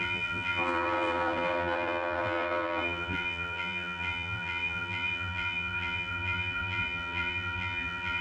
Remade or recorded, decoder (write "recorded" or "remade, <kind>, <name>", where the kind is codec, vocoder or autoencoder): remade, vocoder, BigVGAN v2